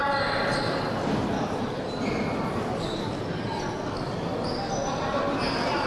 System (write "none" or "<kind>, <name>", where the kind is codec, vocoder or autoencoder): none